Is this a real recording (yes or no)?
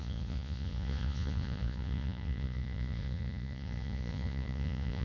no